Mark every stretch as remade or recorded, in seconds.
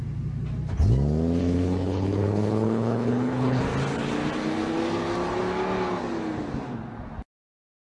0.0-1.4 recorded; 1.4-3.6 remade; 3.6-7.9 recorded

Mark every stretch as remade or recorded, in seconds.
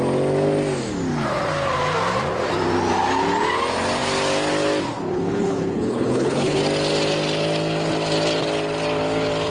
0.0-5.1 recorded; 5.1-6.6 remade; 6.6-9.5 recorded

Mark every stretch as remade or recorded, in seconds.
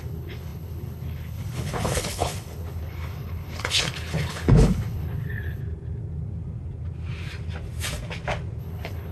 0.0-5.6 remade; 5.6-8.6 recorded; 8.6-9.1 remade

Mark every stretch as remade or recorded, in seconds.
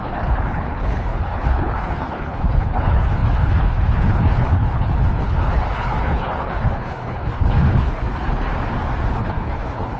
0.0-8.5 remade; 8.5-9.1 recorded; 9.1-10.0 remade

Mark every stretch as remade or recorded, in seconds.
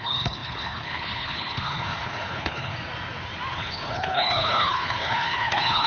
0.0-2.7 remade; 2.7-3.5 recorded; 3.5-5.9 remade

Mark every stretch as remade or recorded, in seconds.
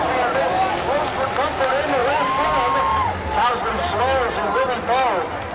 0.0-5.5 recorded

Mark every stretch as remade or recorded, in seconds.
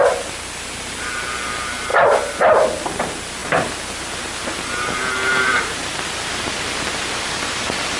0.0-8.0 recorded